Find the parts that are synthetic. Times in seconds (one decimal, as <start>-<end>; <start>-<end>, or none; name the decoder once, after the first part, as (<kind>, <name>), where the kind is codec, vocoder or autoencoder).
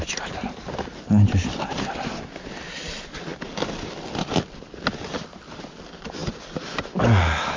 none